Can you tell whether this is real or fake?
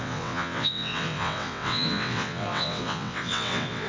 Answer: fake